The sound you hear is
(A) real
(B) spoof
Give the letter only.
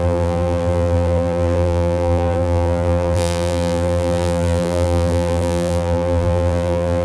B